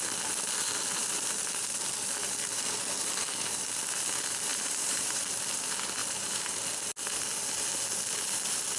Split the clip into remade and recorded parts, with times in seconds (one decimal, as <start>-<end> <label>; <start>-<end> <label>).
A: 0.0-4.5 recorded; 4.5-5.2 remade; 5.2-6.0 recorded; 6.0-6.5 remade; 6.5-8.8 recorded